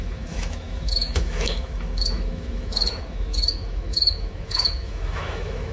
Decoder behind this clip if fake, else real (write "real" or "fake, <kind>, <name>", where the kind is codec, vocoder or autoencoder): fake, autoencoder, DAC-VAE